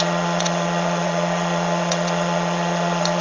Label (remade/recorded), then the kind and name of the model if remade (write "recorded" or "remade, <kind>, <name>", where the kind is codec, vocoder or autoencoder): remade, vocoder, WaveNeXt